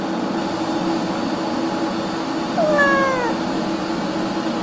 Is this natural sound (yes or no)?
yes